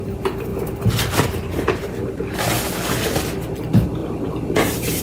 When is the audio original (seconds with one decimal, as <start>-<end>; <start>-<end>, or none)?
0.0-0.5; 2.1-4.0

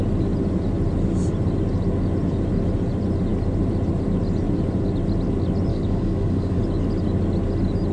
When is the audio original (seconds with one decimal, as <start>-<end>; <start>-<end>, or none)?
0.0-5.7; 6.6-7.9

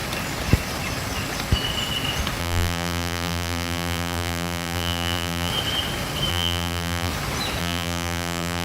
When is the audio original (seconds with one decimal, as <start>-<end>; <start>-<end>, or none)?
0.0-2.4; 5.5-6.3; 7.1-7.6